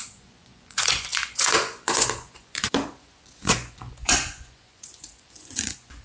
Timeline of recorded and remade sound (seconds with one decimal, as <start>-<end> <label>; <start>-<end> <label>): 0.0-6.0 remade